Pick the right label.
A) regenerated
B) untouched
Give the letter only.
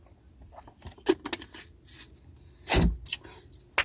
B